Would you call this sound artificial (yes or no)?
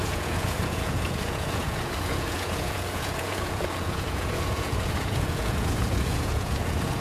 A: yes